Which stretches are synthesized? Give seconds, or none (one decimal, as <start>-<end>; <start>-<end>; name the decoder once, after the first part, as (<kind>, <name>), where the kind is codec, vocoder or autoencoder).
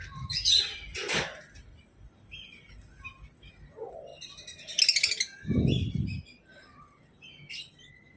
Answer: none